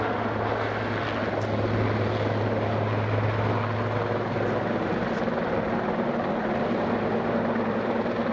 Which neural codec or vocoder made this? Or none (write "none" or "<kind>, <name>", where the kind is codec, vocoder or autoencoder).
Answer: none